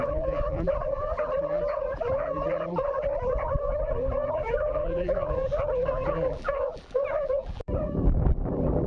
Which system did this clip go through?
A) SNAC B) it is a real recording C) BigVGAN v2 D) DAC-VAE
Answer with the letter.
C